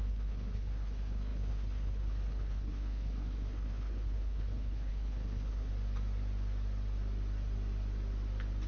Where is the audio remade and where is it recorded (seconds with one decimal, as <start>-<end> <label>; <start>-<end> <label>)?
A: 0.0-5.7 remade; 5.7-8.7 recorded